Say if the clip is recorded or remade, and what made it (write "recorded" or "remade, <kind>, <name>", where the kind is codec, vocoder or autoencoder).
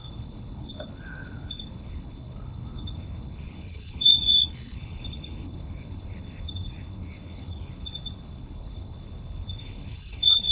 remade, codec, HILCodec